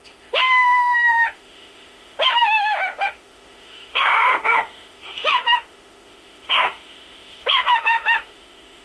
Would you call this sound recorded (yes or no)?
no